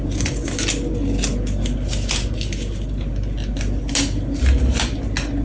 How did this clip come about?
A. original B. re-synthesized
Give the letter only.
A